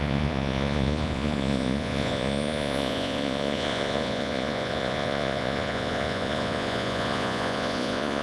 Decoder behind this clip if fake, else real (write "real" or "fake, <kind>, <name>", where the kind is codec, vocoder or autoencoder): fake, vocoder, Vocos